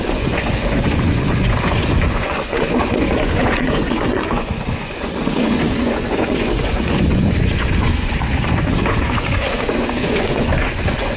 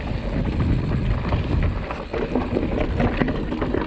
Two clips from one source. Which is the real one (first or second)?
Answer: second